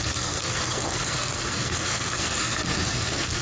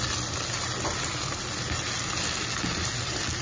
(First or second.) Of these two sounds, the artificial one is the first